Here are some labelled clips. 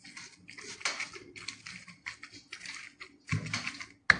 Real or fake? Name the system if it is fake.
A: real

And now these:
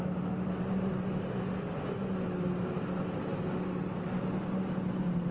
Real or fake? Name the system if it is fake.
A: real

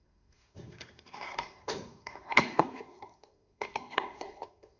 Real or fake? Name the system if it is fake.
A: fake, codec, SNAC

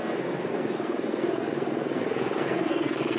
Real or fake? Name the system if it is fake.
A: fake, codec, SNAC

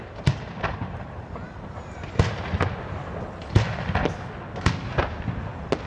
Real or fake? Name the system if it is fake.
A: real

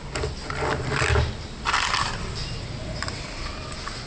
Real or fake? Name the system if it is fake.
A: real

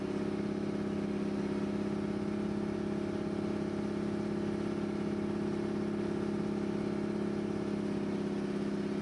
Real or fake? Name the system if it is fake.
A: real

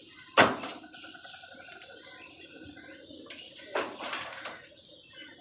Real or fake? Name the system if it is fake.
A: real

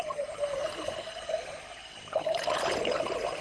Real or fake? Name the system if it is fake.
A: real